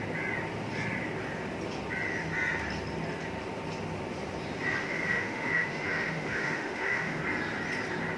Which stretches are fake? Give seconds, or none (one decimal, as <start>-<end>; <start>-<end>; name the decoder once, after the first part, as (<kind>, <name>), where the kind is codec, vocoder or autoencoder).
4.8-7.2 (autoencoder, DAC-VAE)